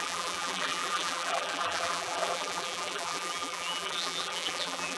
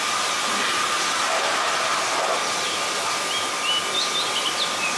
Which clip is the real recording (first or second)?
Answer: second